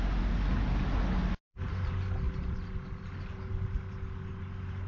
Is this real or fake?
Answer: real